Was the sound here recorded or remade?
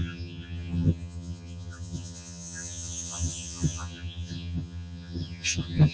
remade